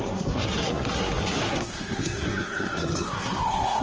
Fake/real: fake